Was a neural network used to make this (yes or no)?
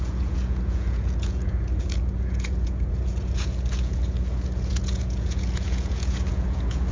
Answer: yes